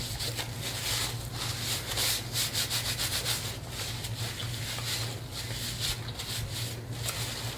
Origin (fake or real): real